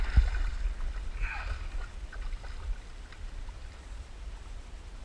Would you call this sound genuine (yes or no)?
yes